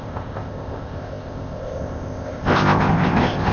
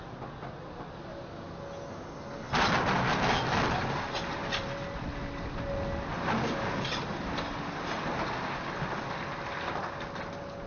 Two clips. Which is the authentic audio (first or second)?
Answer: second